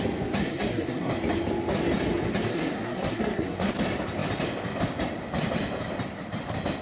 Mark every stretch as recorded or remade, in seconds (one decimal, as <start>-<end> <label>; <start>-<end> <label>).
0.0-0.4 recorded; 0.4-1.1 remade; 1.1-2.5 recorded; 2.5-3.7 remade; 3.7-6.8 recorded